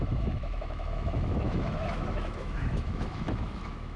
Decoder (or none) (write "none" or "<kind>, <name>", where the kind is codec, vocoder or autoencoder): autoencoder, DAC-VAE